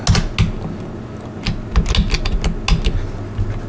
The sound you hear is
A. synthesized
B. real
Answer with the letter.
B